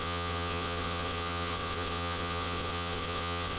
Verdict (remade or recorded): remade